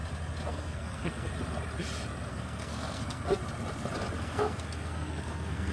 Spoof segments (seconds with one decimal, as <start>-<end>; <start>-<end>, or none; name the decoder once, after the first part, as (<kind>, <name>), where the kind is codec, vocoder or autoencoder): 0.5-1.3 (codec, SNAC); 2.3-3.4; 4.2-5.7